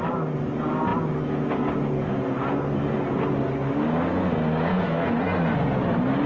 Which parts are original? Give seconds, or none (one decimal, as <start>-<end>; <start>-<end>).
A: 0.0-4.7; 5.2-6.3